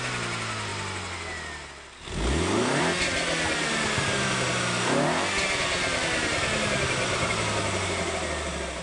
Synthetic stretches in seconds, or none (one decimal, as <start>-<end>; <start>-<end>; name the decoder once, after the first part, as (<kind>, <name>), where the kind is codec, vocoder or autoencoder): none